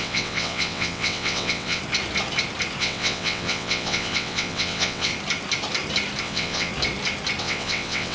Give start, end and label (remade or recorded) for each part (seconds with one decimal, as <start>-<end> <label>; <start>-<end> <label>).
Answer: 0.0-1.8 remade; 1.8-2.8 recorded; 2.8-5.1 remade; 5.1-6.2 recorded; 6.2-6.7 remade; 6.7-7.4 recorded; 7.4-8.1 remade